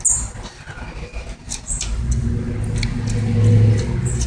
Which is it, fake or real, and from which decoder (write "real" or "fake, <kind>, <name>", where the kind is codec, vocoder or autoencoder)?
real